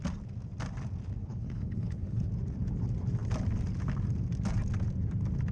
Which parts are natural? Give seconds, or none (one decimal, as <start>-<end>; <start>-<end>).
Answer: 0.0-1.2; 2.3-5.5